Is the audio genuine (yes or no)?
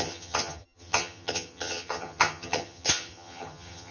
no